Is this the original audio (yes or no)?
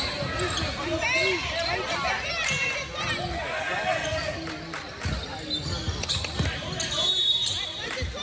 yes